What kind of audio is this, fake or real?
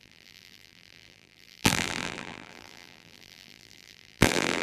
fake